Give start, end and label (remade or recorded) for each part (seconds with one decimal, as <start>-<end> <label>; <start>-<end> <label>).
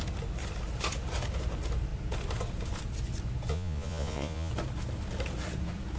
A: 0.0-3.5 recorded; 3.5-4.5 remade; 4.5-6.0 recorded